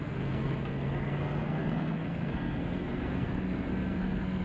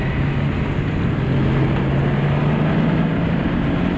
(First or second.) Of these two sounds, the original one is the second